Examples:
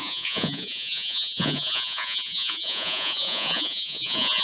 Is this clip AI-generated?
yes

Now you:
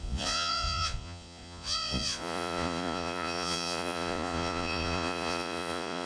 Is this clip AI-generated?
yes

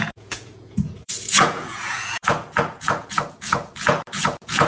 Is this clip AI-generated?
yes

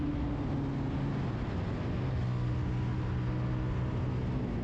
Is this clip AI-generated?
no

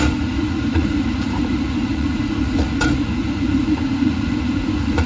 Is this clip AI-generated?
yes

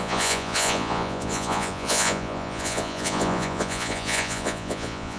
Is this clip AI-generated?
yes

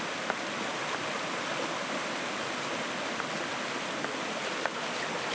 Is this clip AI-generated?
no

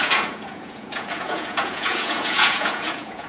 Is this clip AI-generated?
yes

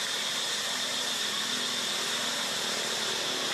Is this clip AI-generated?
no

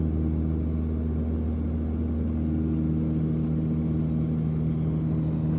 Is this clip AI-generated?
no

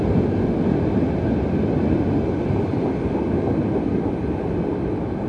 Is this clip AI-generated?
no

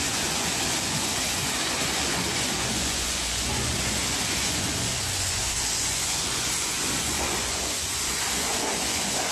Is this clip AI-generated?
yes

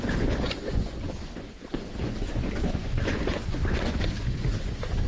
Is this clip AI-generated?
yes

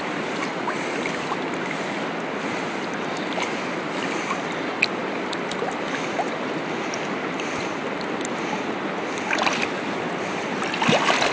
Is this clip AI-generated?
no